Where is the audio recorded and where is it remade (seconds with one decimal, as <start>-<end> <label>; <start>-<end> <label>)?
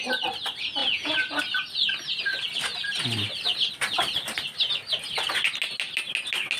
0.0-0.8 recorded; 0.8-1.4 remade; 1.4-6.6 recorded